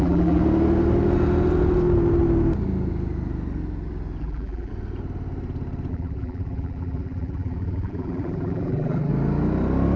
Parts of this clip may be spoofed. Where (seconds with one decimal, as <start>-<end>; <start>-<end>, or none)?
0.0-0.4; 4.2-4.7; 5.9-9.1